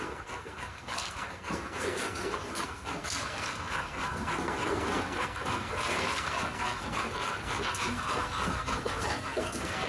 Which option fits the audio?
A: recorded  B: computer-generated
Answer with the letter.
B